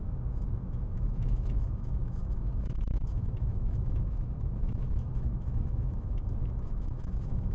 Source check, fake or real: fake